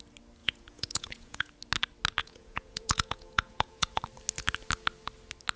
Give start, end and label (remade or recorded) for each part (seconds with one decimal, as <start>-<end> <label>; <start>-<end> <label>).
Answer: 0.0-0.4 recorded; 0.4-1.5 remade; 1.5-2.2 recorded; 2.2-4.0 remade; 4.0-5.6 recorded